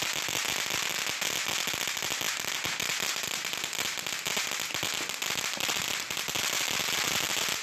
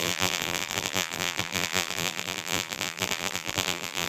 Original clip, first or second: first